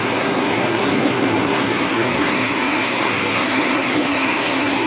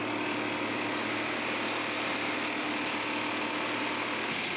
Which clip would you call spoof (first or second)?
first